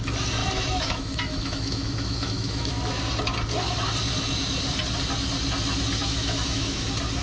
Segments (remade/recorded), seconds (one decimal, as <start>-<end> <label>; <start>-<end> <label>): 0.0-0.4 recorded; 0.4-3.0 remade; 3.0-6.0 recorded; 6.0-6.8 remade; 6.8-7.2 recorded